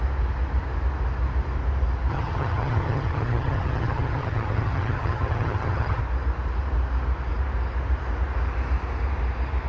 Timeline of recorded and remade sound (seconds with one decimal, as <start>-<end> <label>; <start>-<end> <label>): 0.0-2.1 recorded; 2.1-6.0 remade; 6.0-9.7 recorded